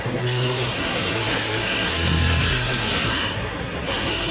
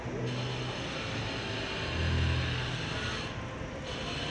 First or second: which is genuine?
second